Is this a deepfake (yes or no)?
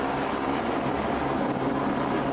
no